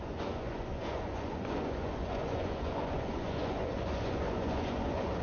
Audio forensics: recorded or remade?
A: remade